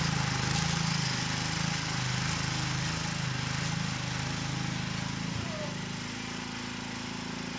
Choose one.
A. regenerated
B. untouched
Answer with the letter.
B